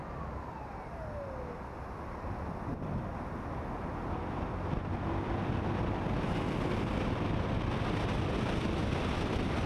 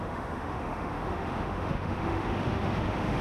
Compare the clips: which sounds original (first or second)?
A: first